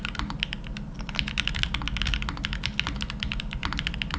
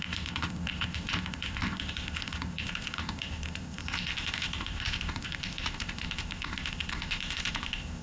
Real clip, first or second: first